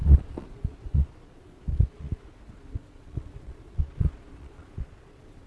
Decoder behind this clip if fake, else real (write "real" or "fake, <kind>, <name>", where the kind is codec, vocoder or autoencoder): fake, vocoder, Vocos